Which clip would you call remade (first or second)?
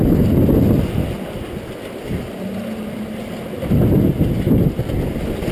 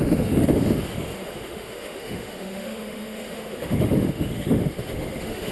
second